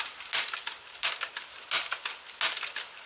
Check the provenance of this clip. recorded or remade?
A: recorded